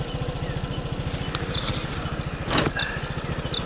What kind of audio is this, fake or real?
real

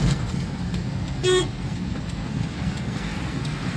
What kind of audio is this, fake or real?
fake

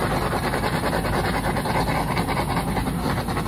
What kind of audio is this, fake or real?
real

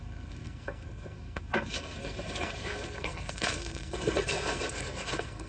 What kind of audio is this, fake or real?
fake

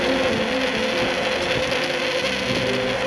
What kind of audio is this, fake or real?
real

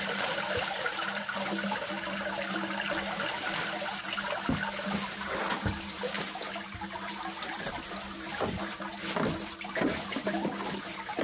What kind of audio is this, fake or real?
real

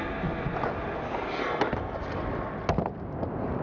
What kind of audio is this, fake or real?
real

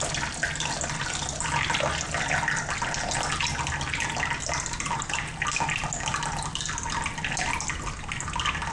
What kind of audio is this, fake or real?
real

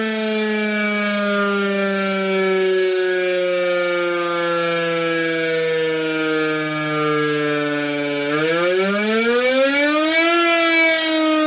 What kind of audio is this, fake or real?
real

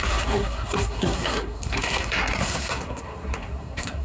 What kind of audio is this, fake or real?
fake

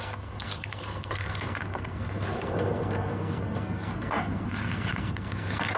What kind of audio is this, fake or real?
fake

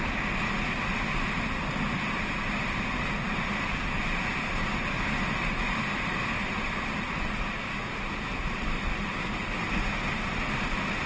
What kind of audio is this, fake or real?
real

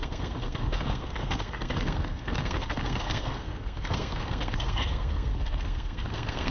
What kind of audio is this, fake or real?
fake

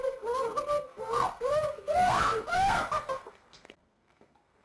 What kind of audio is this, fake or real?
fake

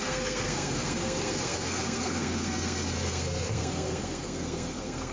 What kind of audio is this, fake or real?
fake